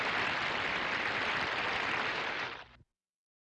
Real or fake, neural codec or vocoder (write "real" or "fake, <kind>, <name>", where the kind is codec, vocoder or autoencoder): real